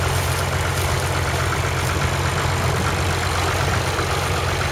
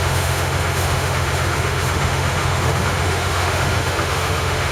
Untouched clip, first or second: first